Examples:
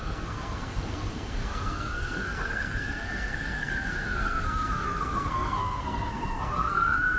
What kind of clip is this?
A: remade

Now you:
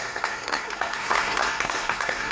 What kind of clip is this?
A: remade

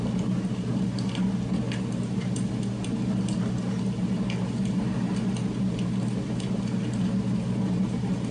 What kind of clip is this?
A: recorded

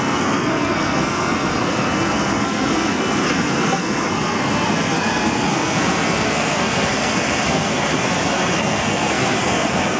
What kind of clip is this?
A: remade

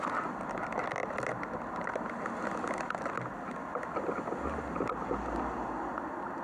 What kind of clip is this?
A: recorded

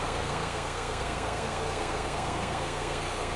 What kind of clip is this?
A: remade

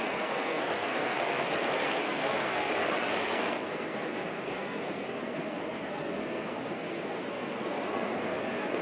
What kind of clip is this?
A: remade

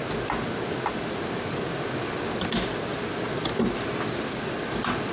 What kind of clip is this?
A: recorded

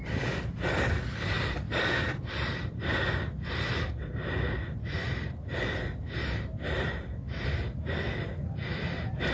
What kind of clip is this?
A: recorded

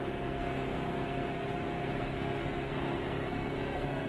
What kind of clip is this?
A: remade